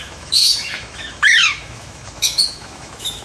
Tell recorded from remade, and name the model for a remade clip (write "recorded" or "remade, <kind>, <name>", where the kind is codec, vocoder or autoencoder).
remade, autoencoder, DAC-VAE